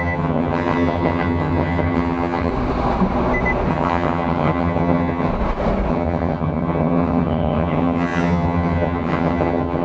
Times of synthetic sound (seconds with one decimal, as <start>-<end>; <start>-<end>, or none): 0.0-2.5; 3.7-5.3; 5.9-9.8